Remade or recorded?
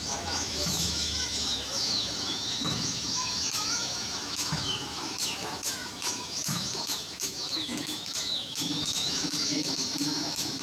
remade